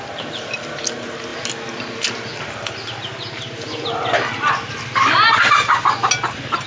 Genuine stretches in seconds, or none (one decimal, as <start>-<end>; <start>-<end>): 0.0-6.7